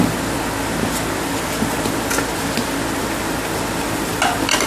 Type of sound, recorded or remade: recorded